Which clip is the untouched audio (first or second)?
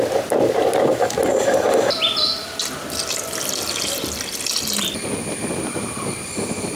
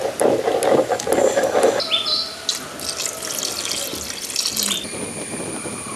second